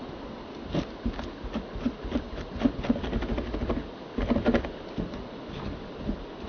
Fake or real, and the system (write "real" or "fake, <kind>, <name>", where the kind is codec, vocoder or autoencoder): real